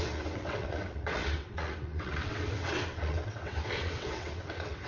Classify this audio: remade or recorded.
remade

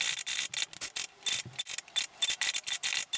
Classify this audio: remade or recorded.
recorded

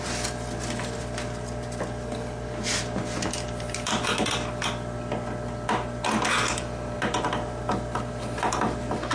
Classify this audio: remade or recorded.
recorded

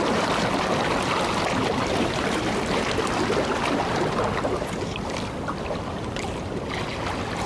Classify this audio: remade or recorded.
recorded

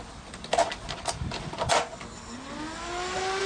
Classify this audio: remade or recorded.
recorded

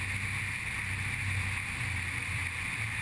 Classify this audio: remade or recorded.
recorded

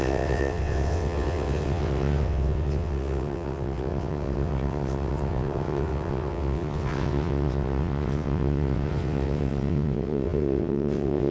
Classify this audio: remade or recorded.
remade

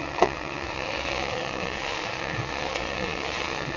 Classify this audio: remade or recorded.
remade